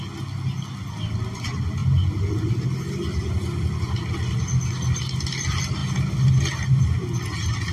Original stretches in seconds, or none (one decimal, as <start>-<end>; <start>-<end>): 0.0-7.7

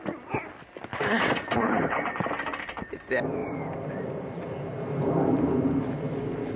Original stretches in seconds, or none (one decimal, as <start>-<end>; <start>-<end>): 0.0-0.9; 2.8-6.6